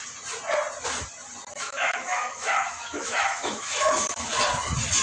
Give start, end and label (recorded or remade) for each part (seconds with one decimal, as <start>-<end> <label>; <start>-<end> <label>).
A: 0.0-1.6 recorded; 1.6-4.3 remade; 4.3-5.0 recorded